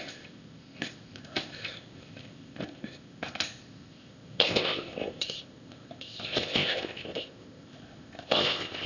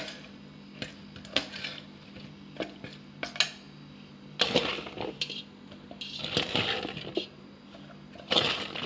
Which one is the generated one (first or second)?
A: first